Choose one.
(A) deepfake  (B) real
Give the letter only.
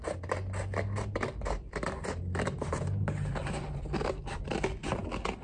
B